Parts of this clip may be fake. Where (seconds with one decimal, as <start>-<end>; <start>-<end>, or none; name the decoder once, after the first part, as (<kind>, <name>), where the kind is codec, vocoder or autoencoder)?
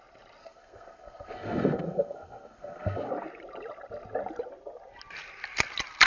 0.4-3.1 (codec, SNAC)